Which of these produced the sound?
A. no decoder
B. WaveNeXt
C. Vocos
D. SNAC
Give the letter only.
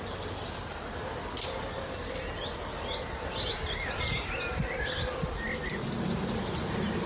A